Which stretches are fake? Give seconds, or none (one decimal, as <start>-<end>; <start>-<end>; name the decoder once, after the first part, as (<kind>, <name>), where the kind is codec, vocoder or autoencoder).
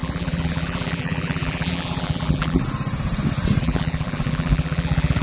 0.0-2.6 (vocoder, BigVGAN v2); 3.6-5.2